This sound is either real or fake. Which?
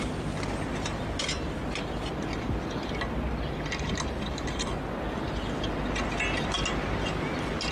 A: real